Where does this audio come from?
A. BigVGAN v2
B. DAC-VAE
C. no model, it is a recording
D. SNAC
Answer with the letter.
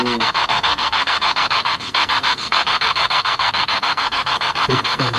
D